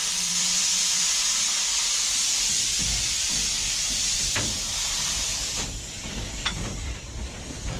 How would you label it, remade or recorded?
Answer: remade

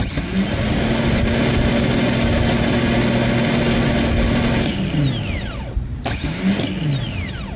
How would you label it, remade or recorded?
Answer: recorded